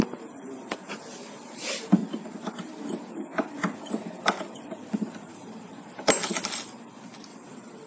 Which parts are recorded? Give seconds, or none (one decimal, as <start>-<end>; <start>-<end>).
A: 0.0-7.3